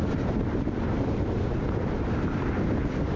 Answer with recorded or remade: recorded